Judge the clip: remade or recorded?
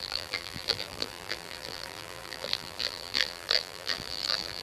remade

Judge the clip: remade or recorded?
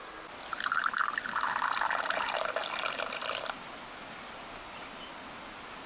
recorded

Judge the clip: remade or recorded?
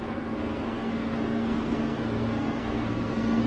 remade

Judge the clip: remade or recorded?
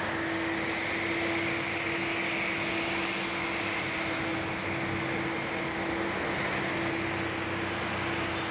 recorded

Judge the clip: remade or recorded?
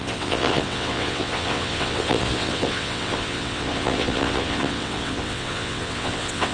remade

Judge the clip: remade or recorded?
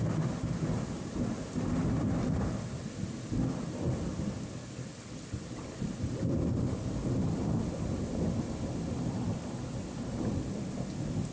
recorded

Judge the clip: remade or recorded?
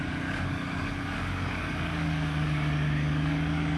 remade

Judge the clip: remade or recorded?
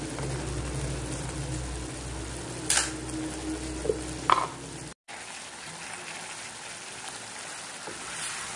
recorded